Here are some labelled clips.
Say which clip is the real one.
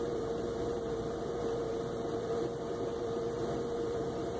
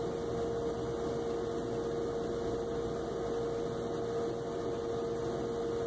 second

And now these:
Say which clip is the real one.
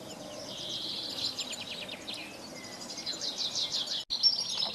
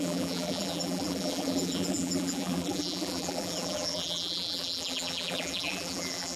first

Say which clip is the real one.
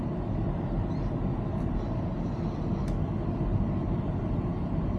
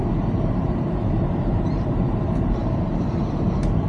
first